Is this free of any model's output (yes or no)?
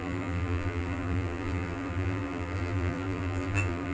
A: no